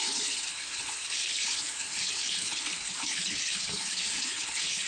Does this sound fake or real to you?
fake